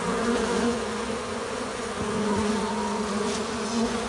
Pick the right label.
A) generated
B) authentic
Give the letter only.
A